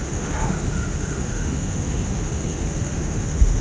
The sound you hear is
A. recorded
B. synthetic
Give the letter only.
B